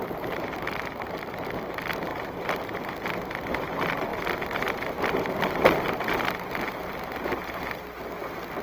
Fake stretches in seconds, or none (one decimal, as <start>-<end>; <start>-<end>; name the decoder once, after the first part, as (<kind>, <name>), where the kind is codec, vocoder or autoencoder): none